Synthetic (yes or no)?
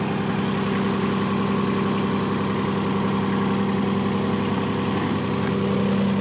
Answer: no